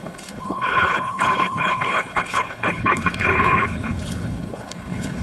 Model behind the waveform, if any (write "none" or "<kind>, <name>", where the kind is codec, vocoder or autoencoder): codec, HILCodec